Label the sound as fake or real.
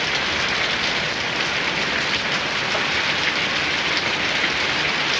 real